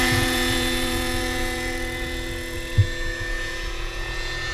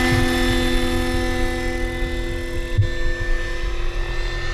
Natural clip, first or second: second